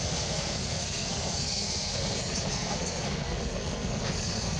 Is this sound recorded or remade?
remade